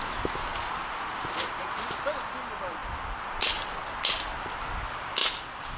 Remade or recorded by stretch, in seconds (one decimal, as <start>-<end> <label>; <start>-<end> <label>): 0.0-5.8 recorded